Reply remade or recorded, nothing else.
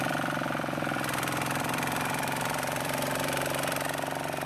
remade